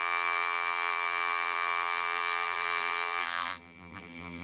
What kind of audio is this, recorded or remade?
remade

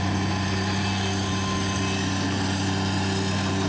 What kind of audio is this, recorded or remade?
recorded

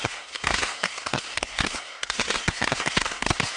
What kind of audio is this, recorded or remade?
remade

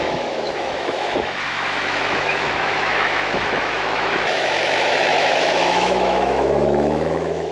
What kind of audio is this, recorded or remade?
remade